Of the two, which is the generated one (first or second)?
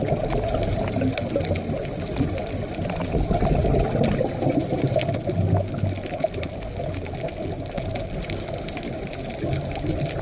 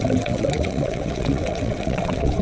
second